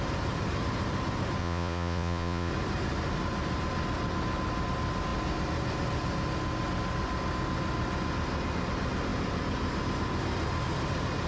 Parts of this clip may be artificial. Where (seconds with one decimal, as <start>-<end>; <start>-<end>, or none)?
1.4-2.5